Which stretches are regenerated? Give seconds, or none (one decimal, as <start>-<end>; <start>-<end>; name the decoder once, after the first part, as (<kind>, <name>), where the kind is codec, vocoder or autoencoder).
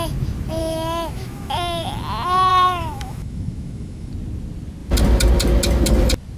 0.6-2.0 (autoencoder, DAC-VAE); 2.5-4.1